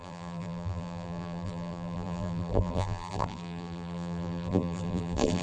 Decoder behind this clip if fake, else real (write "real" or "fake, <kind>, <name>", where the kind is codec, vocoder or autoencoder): fake, vocoder, BigVGAN v2